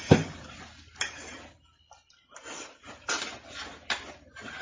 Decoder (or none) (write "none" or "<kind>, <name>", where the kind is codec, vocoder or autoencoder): none